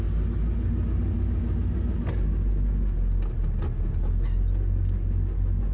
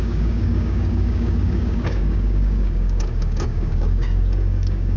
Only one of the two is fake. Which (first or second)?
second